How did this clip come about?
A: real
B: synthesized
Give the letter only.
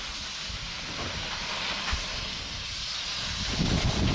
A